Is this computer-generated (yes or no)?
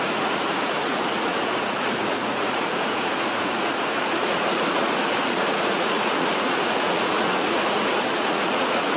yes